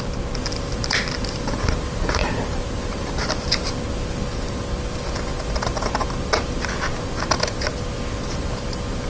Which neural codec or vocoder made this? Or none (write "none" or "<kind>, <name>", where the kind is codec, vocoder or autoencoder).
none